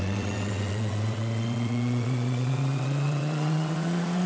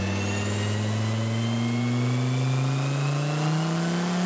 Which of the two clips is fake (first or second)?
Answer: first